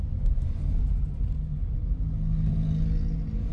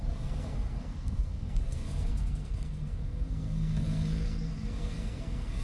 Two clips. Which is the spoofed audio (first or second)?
second